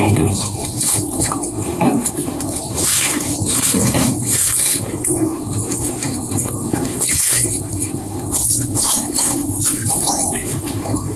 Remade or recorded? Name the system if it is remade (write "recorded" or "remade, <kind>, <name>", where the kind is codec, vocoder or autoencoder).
remade, codec, SNAC